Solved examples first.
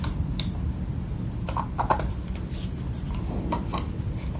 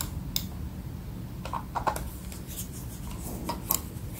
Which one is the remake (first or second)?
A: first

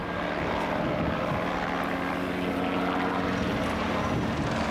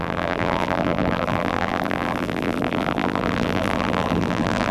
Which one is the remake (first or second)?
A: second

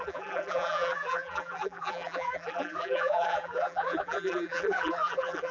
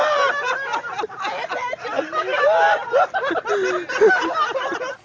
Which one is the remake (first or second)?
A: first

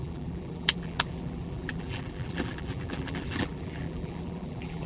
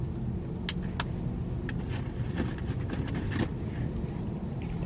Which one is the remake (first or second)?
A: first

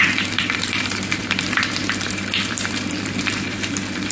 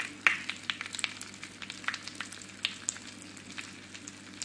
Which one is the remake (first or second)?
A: first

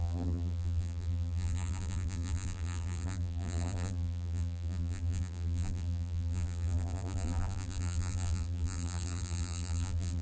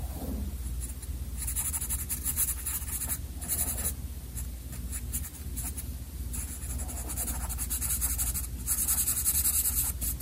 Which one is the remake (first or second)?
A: first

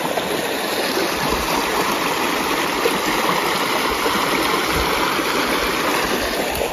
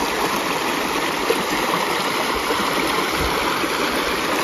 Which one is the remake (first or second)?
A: second